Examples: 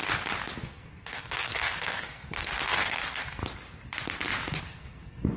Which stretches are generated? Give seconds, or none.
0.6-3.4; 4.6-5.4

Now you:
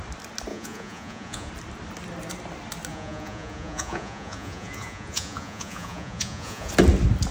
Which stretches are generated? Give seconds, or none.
0.5-1.5; 2.9-6.7

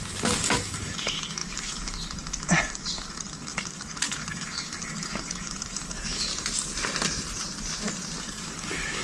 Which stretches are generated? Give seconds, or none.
0.0-6.3; 8.2-9.0

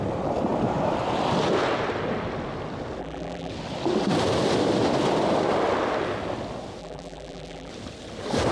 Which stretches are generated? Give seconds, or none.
3.0-3.5; 6.8-7.7

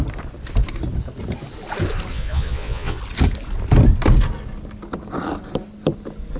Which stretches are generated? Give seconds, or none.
2.1-3.0

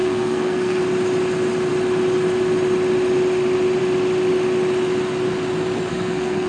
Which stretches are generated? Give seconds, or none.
0.0-0.8; 5.9-6.5

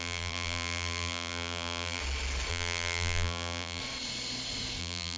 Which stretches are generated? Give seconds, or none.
0.0-2.0; 2.5-3.8; 4.8-5.2